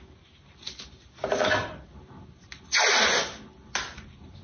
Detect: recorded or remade recorded